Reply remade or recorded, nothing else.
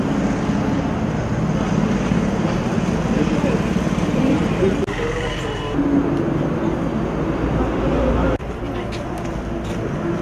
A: recorded